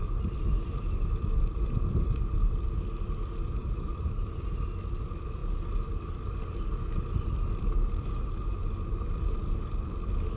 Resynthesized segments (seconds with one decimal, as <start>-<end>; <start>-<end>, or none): 3.6-4.6